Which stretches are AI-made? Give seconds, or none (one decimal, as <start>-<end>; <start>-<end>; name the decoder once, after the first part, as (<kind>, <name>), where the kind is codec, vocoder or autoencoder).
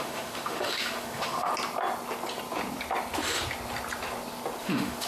0.0-1.5 (autoencoder, DAC-VAE); 4.6-5.1